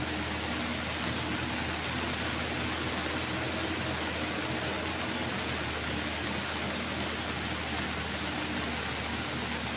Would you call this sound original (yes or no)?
yes